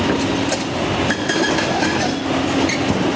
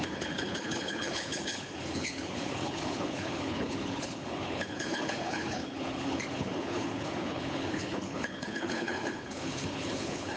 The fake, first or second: second